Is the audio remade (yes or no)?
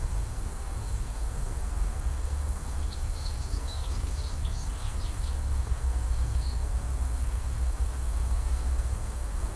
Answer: yes